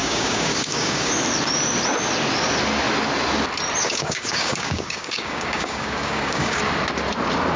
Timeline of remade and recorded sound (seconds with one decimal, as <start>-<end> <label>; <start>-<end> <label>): 0.0-1.1 remade; 1.1-3.8 recorded; 3.8-6.6 remade; 6.6-7.6 recorded